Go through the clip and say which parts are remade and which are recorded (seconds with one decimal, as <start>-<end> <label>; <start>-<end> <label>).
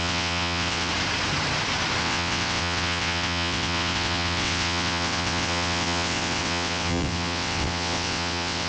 0.0-0.9 remade; 0.9-2.0 recorded; 2.0-8.7 remade